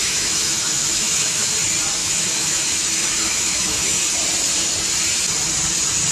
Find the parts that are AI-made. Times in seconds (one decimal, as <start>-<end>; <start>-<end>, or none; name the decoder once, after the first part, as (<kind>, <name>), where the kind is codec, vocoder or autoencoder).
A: 0.0-1.5 (autoencoder, DAC-VAE); 2.0-4.0